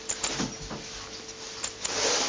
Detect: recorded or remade recorded